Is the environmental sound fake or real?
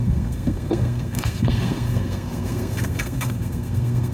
fake